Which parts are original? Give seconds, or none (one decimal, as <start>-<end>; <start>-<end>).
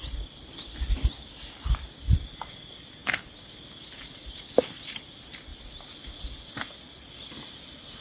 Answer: 0.0-8.0